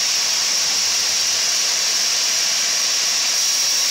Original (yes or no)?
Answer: yes